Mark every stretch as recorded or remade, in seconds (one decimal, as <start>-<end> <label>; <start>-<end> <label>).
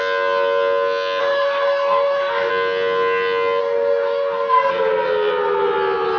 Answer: 0.0-1.2 recorded; 1.2-2.5 remade; 2.5-3.6 recorded; 3.6-4.7 remade; 4.7-6.2 recorded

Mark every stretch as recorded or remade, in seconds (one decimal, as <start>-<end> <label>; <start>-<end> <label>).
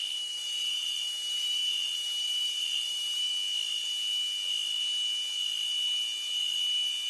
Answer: 0.0-3.3 remade; 3.3-7.1 recorded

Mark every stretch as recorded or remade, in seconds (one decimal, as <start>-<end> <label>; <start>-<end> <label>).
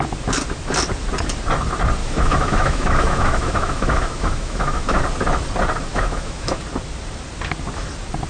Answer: 0.0-2.0 recorded; 2.0-5.0 remade; 5.0-5.9 recorded; 5.9-6.6 remade; 6.6-8.3 recorded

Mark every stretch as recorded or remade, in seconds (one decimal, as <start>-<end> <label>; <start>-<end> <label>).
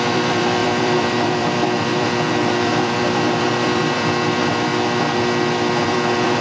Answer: 0.0-4.7 remade; 4.7-5.8 recorded; 5.8-6.4 remade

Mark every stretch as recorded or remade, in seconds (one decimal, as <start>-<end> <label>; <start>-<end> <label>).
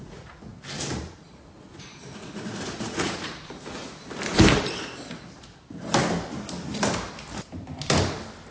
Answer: 0.0-0.5 remade; 0.5-1.0 recorded; 1.0-3.8 remade; 3.8-8.5 recorded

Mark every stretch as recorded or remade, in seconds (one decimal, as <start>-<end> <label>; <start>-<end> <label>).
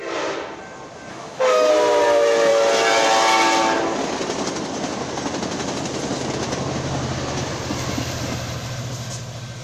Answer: 0.0-1.1 recorded; 1.1-1.7 remade; 1.7-9.6 recorded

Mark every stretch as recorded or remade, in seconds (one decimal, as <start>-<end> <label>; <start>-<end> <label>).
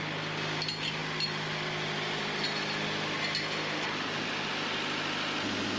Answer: 0.0-5.8 recorded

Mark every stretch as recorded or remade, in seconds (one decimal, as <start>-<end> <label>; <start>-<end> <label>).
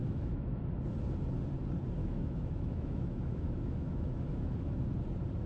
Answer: 0.0-0.6 remade; 0.6-2.0 recorded; 2.0-4.9 remade; 4.9-5.5 recorded